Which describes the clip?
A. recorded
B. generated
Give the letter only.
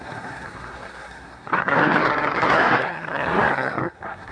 B